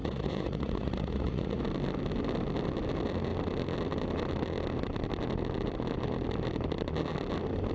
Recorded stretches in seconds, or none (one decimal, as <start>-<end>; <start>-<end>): 1.6-7.7